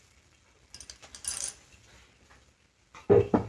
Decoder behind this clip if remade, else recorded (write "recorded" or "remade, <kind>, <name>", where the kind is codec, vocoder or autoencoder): recorded